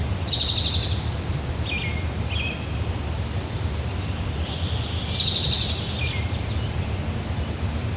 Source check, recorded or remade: recorded